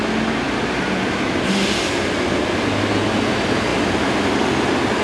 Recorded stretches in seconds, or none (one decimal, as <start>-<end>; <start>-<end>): 0.0-5.0

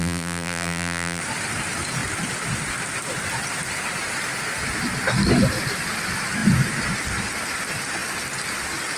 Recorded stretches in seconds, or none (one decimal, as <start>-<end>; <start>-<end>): 1.2-9.0

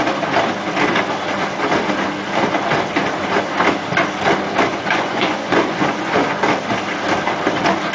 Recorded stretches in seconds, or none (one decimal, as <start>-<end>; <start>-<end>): 0.0-4.7; 6.4-7.9

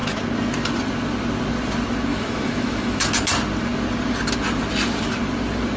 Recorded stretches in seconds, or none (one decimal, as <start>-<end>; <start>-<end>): 0.0-2.1; 3.1-5.8

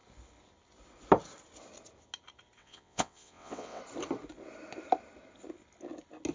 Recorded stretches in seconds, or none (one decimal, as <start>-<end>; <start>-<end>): 0.0-2.6; 3.8-6.3

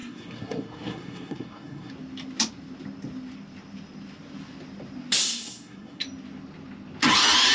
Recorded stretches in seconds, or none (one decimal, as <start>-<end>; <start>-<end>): 1.9-5.2; 6.0-7.5